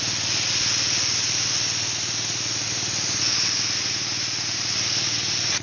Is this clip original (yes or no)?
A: yes